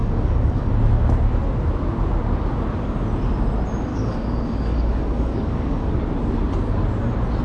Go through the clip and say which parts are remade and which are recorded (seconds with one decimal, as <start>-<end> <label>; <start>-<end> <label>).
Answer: 0.0-0.7 remade; 0.7-3.9 recorded; 3.9-6.0 remade; 6.0-7.4 recorded